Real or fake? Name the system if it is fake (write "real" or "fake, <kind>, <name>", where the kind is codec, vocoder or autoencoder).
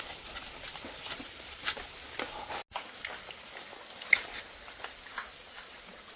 real